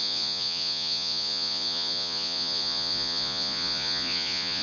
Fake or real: fake